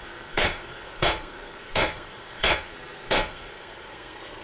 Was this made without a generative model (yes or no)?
no